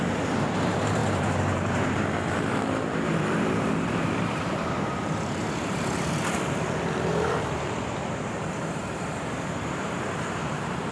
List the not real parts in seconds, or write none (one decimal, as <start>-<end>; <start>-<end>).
0.0-5.4; 7.1-10.9